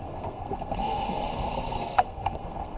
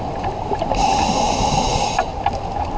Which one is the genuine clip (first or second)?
second